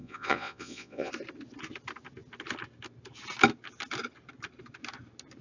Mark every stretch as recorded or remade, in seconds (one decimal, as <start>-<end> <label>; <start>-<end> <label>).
0.0-1.1 remade; 1.1-5.4 recorded